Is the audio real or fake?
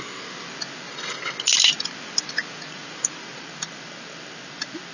real